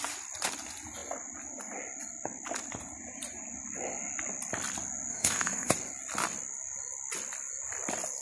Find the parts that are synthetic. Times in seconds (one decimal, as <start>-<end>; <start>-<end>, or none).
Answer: 5.1-5.7